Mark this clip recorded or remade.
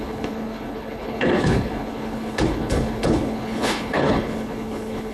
remade